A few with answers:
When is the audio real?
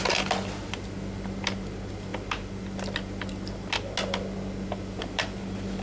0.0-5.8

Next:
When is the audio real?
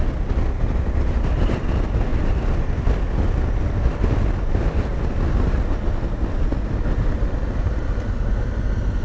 0.0-9.0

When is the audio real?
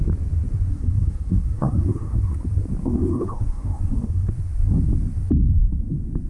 0.0-0.7; 2.4-2.8; 4.3-6.3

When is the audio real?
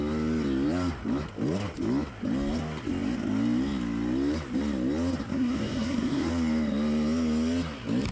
0.0-5.3; 6.3-8.1